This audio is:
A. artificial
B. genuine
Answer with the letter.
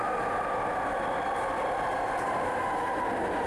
B